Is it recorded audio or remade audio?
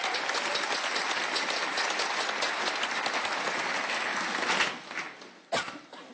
recorded